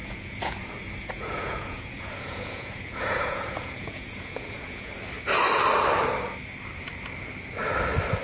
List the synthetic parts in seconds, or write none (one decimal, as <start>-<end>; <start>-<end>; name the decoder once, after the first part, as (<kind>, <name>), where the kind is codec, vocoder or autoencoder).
0.0-4.9 (vocoder, Vocos)